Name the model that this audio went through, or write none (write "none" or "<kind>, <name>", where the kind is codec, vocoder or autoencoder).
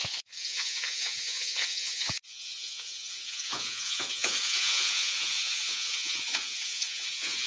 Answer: vocoder, Vocos